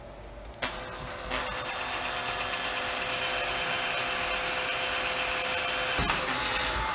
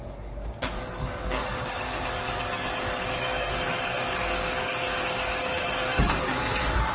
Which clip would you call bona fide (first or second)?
first